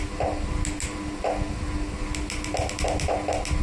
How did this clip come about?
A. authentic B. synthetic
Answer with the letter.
A